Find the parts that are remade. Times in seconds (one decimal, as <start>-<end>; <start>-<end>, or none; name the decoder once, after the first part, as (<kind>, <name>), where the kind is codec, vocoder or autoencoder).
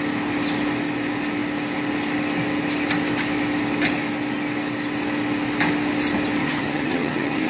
6.4-7.5 (vocoder, HiFi-GAN)